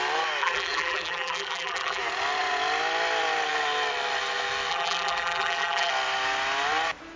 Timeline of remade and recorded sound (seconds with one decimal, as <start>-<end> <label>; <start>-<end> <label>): 0.0-0.4 recorded; 0.4-2.0 remade; 2.0-4.7 recorded; 4.7-5.9 remade; 5.9-7.2 recorded